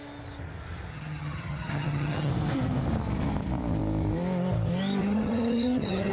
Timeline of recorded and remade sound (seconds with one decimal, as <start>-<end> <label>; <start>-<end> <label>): 0.0-0.9 recorded; 0.9-2.3 remade; 2.3-5.0 recorded; 5.0-6.1 remade